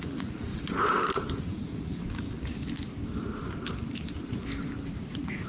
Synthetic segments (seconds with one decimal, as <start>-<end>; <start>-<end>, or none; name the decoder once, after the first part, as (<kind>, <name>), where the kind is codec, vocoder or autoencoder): 0.0-0.5 (vocoder, Vocos); 1.4-2.0; 5.0-5.5